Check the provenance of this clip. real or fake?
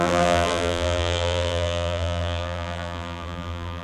fake